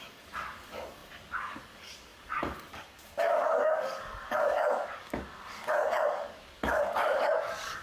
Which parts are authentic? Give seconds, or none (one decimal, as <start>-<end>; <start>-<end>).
none